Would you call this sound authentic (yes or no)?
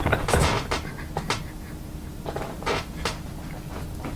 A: yes